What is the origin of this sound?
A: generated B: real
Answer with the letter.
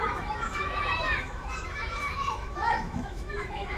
A